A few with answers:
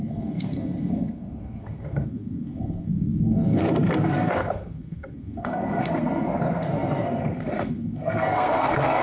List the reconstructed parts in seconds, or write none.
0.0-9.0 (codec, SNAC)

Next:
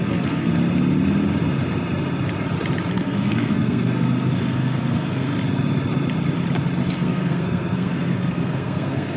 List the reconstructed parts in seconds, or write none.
0.0-0.5 (codec, SNAC); 2.9-5.3; 6.9-9.2